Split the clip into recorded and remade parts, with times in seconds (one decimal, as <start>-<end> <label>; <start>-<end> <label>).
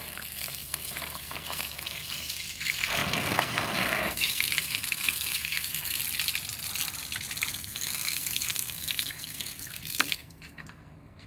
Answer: 0.0-6.0 remade; 6.0-7.5 recorded; 7.5-11.3 remade